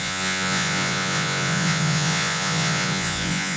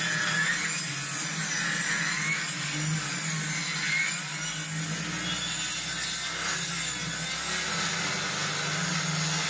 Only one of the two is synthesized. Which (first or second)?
first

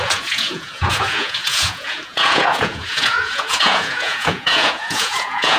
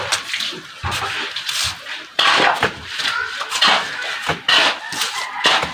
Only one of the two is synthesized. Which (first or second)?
first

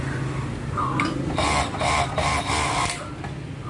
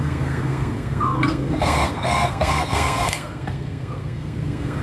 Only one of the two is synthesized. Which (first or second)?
second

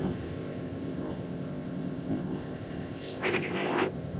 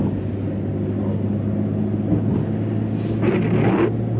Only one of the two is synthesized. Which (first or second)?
first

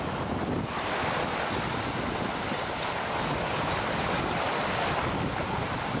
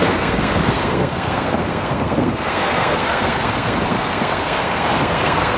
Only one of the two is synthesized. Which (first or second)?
second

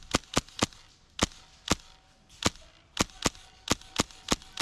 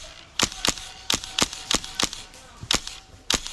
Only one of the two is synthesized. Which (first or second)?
second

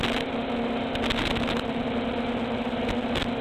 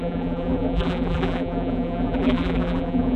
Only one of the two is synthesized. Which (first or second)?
second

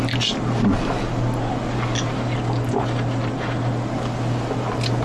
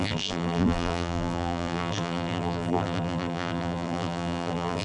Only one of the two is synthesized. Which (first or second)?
second